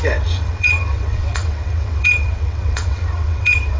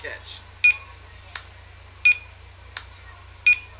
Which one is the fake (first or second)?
first